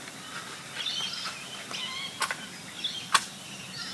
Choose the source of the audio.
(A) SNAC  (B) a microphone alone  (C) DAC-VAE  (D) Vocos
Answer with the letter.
B